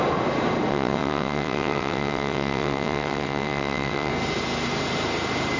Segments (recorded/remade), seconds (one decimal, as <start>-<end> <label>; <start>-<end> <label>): 0.0-0.7 recorded; 0.7-4.1 remade; 4.1-5.6 recorded